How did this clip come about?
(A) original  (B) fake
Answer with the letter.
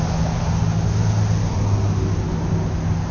A